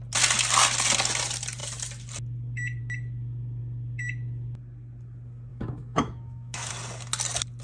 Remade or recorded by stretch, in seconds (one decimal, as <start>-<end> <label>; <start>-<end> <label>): 0.0-5.5 recorded; 5.5-6.7 remade; 6.7-7.6 recorded